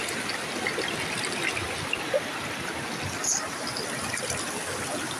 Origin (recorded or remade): recorded